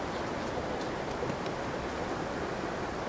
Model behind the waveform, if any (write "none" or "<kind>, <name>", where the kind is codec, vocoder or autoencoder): none